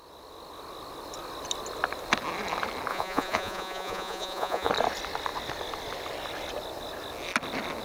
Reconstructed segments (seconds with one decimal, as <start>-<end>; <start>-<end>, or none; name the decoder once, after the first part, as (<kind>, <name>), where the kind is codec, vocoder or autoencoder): 2.9-4.7 (vocoder, Vocos)